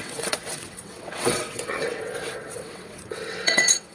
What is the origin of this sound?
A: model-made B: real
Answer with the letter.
A